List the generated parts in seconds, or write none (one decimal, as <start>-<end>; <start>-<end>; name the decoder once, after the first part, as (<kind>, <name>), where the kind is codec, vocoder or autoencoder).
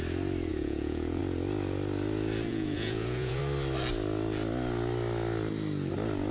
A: 0.5-1.2 (vocoder, Vocos); 2.5-3.4